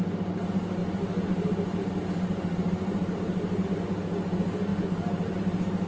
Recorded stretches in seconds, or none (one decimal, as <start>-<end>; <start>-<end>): 0.0-0.8; 3.8-4.7; 5.4-5.9